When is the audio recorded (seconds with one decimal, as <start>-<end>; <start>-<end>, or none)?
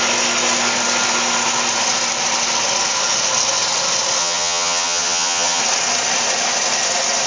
0.0-4.2; 5.6-7.3